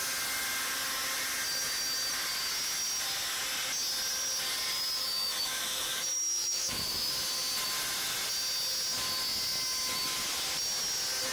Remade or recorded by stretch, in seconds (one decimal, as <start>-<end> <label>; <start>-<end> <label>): 0.0-5.0 recorded; 5.0-7.1 remade; 7.1-11.3 recorded

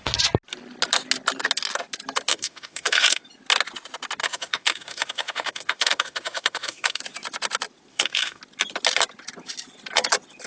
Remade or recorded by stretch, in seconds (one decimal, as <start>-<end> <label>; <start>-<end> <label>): 0.0-2.3 recorded; 2.3-3.2 remade; 3.2-4.2 recorded; 4.2-7.0 remade; 7.0-7.9 recorded; 7.9-8.4 remade; 8.4-10.5 recorded

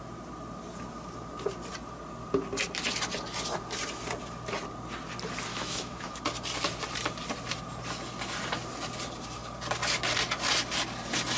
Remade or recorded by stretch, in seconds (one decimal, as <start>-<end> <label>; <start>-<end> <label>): 0.0-5.5 recorded; 5.5-6.2 remade; 6.2-11.4 recorded

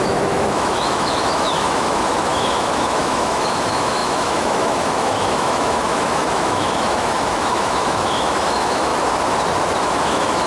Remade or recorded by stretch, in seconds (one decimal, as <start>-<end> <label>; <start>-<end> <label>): 0.0-8.9 remade; 8.9-9.8 recorded; 9.8-10.5 remade

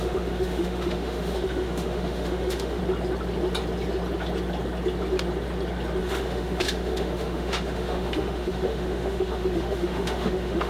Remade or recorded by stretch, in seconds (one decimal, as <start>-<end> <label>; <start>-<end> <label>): 0.0-2.8 remade; 2.8-6.0 recorded; 6.0-10.7 remade

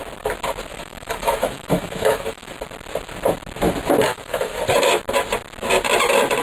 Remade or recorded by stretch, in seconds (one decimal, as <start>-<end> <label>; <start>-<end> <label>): 0.0-0.7 recorded; 0.7-2.5 remade; 2.5-4.1 recorded; 4.1-4.6 remade; 4.6-6.4 recorded

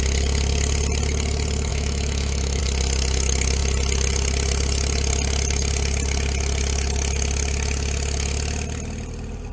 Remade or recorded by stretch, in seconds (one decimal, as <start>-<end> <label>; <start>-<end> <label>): 0.0-1.7 recorded; 1.7-2.6 remade; 2.6-9.5 recorded

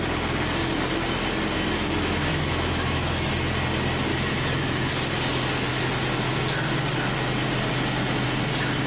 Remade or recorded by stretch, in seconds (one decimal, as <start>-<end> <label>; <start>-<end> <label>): 0.0-2.3 recorded; 2.3-3.3 remade; 3.3-4.1 recorded; 4.1-4.9 remade; 4.9-8.9 recorded